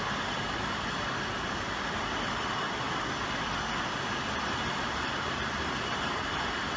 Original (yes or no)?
yes